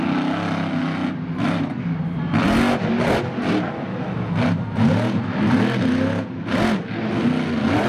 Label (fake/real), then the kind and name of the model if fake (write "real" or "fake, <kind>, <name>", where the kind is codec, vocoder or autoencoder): real